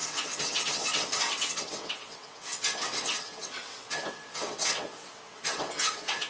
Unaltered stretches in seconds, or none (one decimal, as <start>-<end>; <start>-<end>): none